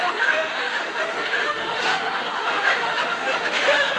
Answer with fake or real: fake